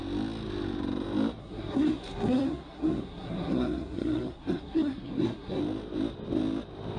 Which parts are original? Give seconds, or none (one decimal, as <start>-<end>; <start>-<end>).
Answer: 0.0-1.4; 5.6-7.0